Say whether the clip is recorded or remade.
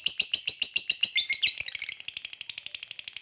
recorded